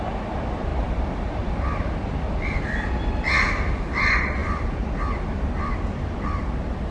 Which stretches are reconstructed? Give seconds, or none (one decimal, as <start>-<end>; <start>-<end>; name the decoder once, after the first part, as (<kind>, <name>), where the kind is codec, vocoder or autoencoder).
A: 0.7-3.1 (vocoder, BigVGAN v2); 4.4-5.7